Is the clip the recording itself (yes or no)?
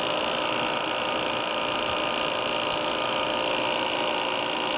yes